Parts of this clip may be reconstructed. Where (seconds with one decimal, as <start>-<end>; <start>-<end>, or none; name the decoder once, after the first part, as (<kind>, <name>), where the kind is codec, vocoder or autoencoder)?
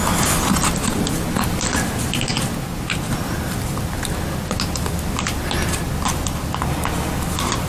none